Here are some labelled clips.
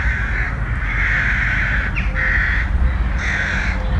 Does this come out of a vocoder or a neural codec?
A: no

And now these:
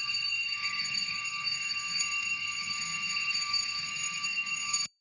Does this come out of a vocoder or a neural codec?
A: yes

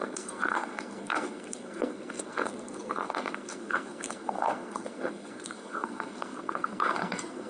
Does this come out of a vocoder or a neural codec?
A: yes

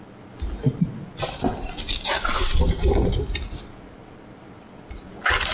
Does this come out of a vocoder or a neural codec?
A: no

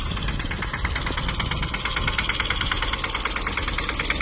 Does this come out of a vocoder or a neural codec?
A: no